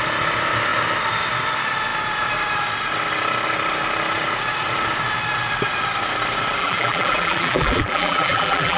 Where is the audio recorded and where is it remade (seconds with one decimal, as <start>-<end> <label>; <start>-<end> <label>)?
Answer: 0.0-6.6 recorded; 6.6-8.8 remade